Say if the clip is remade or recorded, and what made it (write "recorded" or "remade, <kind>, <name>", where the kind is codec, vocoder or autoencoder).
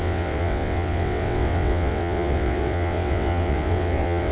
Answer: remade, vocoder, WaveNeXt